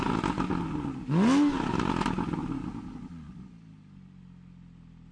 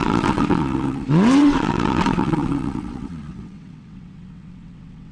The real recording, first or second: first